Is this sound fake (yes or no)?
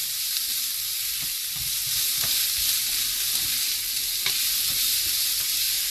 no